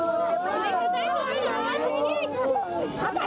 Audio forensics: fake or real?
real